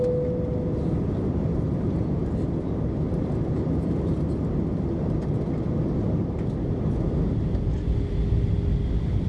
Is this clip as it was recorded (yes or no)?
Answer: yes